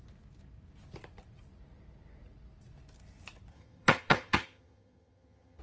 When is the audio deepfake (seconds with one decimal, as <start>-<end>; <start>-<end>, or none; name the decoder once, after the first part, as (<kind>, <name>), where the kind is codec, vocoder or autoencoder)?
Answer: 3.5-5.6 (vocoder, HiFi-GAN)